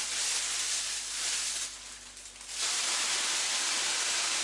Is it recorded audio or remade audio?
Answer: recorded